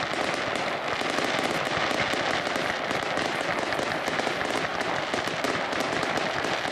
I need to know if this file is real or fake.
real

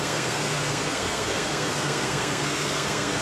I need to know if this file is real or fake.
fake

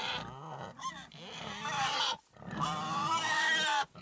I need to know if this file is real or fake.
real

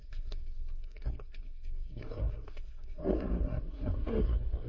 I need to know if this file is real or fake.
fake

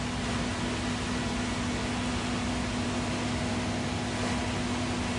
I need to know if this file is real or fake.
real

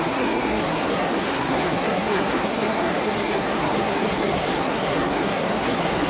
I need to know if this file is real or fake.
fake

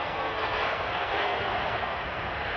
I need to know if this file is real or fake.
fake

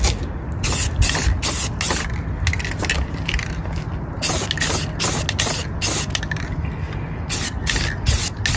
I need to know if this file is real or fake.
real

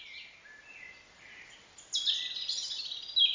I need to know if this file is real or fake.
real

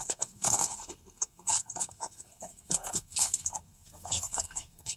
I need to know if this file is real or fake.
fake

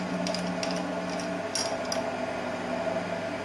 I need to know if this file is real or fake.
real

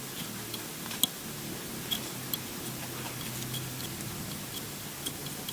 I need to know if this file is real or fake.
real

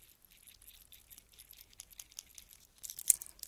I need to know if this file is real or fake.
real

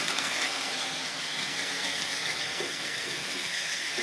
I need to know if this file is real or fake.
fake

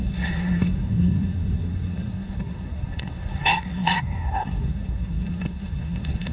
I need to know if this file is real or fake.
fake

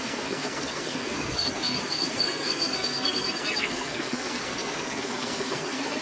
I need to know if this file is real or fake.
fake